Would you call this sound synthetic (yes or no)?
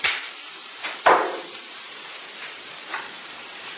yes